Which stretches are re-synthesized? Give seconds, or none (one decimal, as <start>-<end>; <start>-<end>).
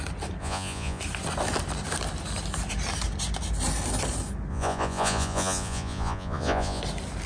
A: 0.4-1.0; 4.5-6.8